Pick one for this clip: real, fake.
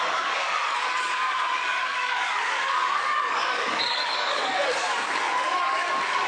fake